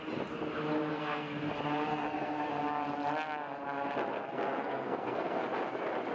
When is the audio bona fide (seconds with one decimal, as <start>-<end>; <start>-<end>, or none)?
0.0-0.9; 1.4-1.9; 2.5-4.1; 5.4-6.1